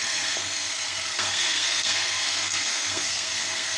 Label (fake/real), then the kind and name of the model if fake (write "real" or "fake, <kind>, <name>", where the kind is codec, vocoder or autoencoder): fake, codec, SNAC